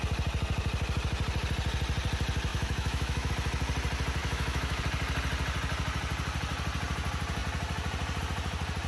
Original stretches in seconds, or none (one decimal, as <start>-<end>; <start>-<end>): 0.0-2.5; 3.3-4.2; 4.8-8.9